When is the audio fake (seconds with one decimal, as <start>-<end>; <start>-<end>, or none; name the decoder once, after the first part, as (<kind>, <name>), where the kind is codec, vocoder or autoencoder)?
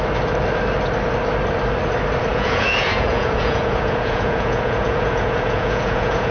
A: 2.3-6.3 (vocoder, Vocos)